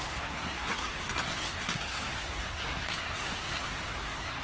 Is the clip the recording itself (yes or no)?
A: no